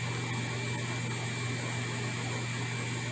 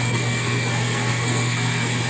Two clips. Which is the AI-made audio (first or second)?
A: second